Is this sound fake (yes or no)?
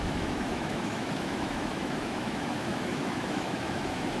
yes